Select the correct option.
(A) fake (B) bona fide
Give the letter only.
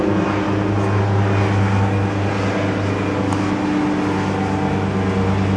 B